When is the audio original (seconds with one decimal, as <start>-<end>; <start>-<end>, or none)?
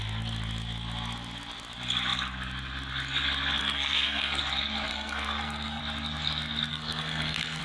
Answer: 0.0-3.6; 4.4-4.9; 5.8-6.7